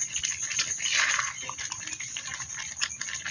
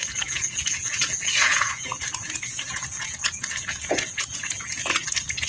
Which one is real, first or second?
first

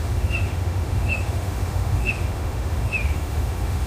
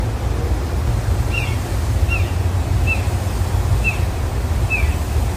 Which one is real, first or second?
second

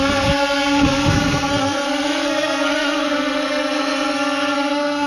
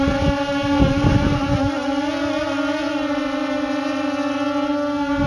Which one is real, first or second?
second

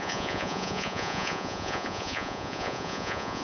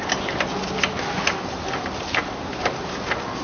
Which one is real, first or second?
second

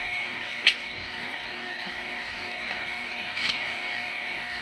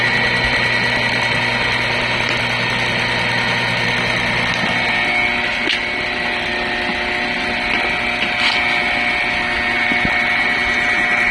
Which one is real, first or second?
second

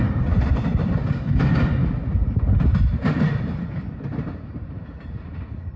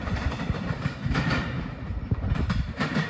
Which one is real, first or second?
first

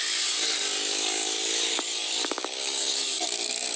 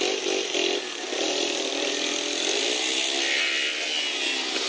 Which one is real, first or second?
second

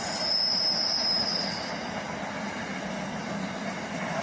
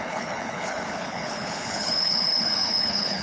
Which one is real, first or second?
first